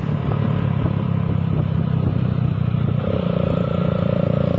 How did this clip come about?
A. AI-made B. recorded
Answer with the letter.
A